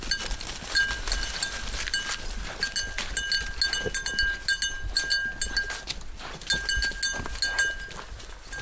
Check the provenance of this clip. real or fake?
real